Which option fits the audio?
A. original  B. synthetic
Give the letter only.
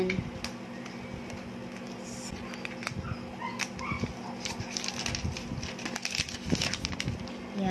A